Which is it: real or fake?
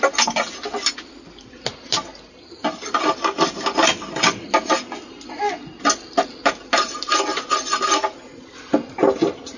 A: real